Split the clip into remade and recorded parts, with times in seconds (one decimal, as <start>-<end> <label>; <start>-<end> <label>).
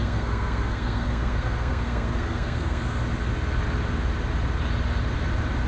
0.0-2.8 remade; 2.8-5.7 recorded